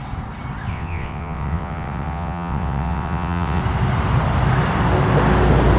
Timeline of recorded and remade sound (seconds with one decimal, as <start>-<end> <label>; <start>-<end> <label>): 0.0-0.7 recorded; 0.7-3.6 remade; 3.6-5.8 recorded